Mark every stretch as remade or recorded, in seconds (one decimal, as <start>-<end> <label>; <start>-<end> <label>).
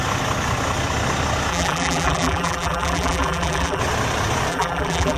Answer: 0.0-1.5 recorded; 1.5-3.8 remade; 3.8-4.5 recorded; 4.5-5.2 remade